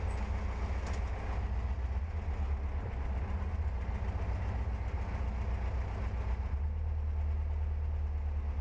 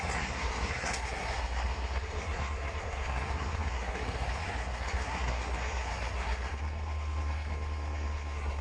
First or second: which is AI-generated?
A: second